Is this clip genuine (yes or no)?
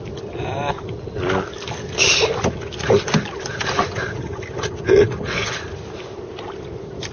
yes